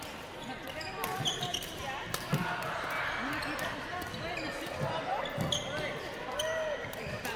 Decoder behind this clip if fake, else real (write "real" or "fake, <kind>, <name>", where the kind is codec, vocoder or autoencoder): real